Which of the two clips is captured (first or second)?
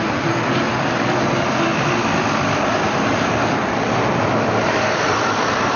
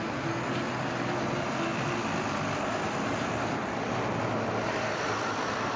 second